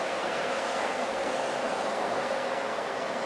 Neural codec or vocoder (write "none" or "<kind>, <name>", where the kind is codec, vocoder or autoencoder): codec, SNAC